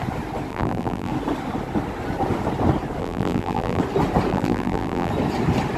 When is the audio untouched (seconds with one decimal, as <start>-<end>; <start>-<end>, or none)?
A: 0.0-0.5; 1.1-3.0; 3.8-4.3; 5.1-5.8